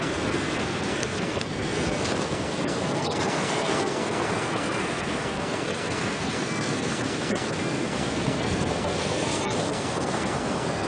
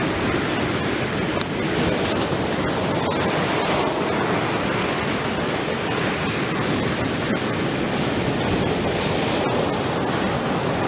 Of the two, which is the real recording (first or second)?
second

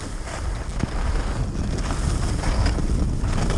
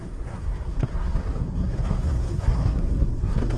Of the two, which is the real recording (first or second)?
first